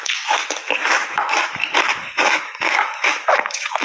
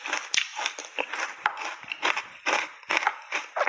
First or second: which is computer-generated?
first